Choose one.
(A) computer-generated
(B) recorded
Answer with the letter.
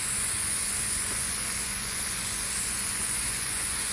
A